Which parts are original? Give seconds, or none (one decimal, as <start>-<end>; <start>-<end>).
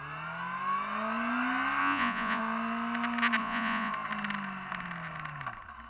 0.0-1.8; 2.4-3.4; 3.9-5.9